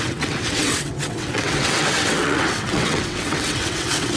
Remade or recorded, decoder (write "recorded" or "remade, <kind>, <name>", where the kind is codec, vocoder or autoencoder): remade, vocoder, WaveNeXt